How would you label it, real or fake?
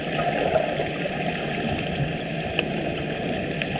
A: real